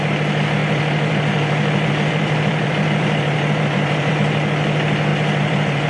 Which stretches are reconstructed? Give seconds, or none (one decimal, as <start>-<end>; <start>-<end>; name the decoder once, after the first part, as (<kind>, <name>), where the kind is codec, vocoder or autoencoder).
0.6-4.1 (vocoder, BigVGAN v2); 5.1-5.9